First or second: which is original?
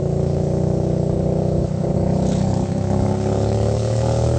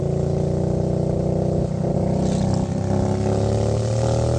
second